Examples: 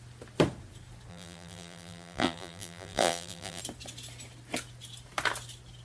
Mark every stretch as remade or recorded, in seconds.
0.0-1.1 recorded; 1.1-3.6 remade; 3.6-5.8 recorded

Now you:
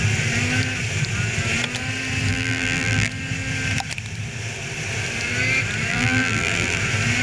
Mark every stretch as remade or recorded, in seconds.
0.0-2.3 recorded; 2.3-3.1 remade; 3.1-5.9 recorded; 5.9-6.8 remade; 6.8-7.2 recorded